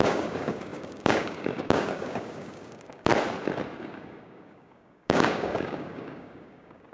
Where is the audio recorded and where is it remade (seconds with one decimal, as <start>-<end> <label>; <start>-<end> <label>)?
0.0-3.1 remade; 3.1-3.8 recorded; 3.8-6.9 remade